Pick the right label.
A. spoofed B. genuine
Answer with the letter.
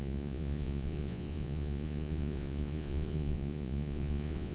A